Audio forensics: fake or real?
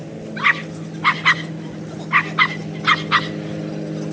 real